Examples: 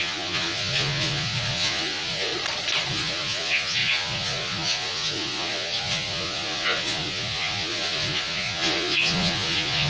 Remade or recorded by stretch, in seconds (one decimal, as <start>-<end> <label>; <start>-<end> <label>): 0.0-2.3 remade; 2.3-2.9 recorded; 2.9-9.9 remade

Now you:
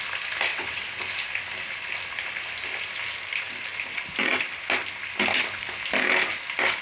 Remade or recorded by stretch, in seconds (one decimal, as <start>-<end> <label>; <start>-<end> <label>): 0.0-0.5 recorded; 0.5-1.0 remade; 1.0-6.8 recorded

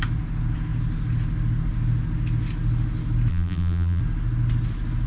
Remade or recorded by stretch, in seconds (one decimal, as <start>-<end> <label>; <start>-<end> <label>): 0.0-3.3 recorded; 3.3-4.0 remade; 4.0-5.1 recorded

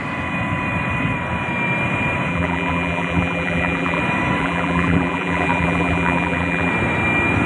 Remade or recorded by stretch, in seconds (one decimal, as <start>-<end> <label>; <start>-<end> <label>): 0.0-2.3 recorded; 2.3-4.0 remade; 4.0-4.4 recorded; 4.4-6.7 remade; 6.7-7.5 recorded

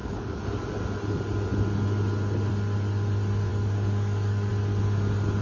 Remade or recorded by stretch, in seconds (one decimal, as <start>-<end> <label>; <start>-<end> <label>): 0.0-0.7 remade; 0.7-3.5 recorded; 3.5-4.5 remade; 4.5-5.4 recorded

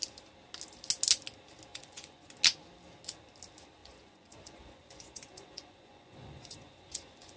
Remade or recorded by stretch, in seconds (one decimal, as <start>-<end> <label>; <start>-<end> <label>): 0.0-1.7 recorded; 1.7-2.3 remade; 2.3-3.8 recorded; 3.8-7.4 remade